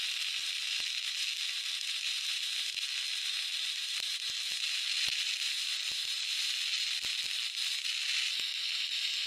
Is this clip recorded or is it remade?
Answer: recorded